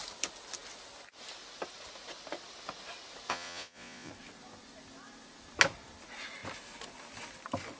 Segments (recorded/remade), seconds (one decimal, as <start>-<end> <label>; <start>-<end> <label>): 0.0-3.3 recorded; 3.3-4.1 remade; 4.1-7.8 recorded